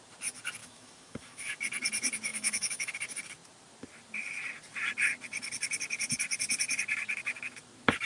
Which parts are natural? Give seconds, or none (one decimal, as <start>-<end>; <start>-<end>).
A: 0.0-0.6; 1.6-2.3; 2.9-8.1